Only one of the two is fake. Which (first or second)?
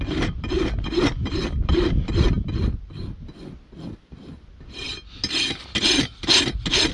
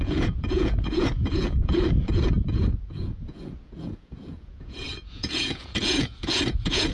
second